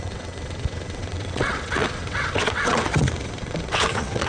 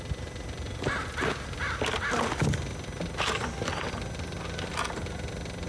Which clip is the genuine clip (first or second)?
second